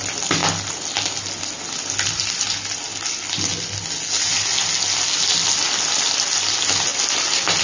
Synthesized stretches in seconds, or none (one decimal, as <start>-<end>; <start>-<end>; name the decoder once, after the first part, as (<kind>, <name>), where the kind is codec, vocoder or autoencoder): none